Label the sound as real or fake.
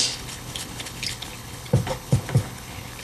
fake